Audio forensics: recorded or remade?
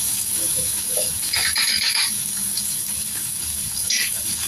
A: remade